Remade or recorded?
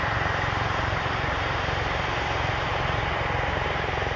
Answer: remade